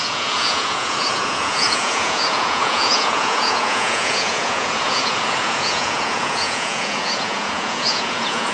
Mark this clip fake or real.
fake